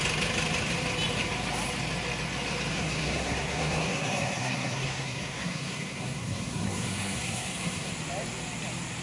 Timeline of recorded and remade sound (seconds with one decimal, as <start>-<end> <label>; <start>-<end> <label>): 0.0-2.7 recorded; 2.7-7.9 remade; 7.9-9.0 recorded